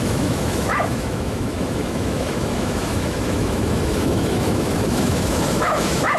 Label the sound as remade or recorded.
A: remade